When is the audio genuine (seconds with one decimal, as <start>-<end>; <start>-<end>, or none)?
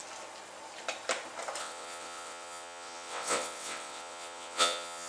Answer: 0.0-1.6